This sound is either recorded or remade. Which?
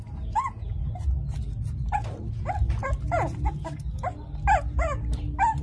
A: recorded